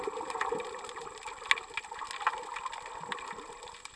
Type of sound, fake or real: real